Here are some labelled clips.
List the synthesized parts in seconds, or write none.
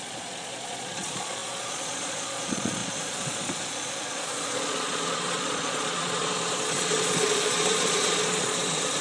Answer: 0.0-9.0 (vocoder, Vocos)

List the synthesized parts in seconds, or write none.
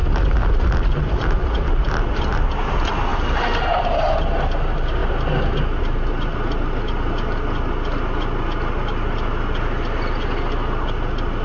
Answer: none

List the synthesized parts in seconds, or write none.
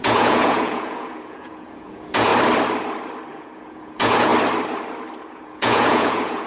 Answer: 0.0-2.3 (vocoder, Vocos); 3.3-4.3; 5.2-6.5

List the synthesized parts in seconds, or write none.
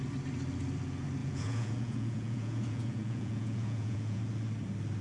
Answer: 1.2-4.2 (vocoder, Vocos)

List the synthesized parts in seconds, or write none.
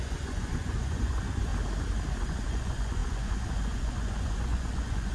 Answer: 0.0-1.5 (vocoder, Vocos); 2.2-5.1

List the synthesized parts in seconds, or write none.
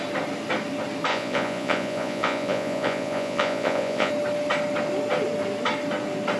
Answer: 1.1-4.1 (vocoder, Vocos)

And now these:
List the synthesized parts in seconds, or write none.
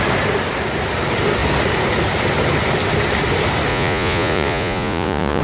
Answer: 3.7-5.4 (vocoder, Vocos)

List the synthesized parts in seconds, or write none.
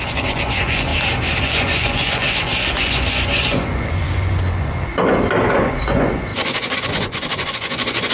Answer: 0.0-0.9 (vocoder, Vocos); 1.4-4.9; 5.4-8.1